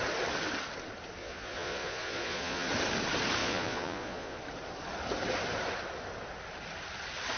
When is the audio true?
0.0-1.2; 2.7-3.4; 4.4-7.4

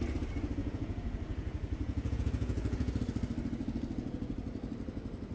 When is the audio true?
0.0-0.6; 3.0-5.3